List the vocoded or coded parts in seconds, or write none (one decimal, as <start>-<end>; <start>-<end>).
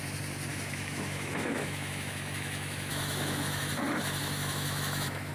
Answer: 0.5-3.7; 4.2-5.3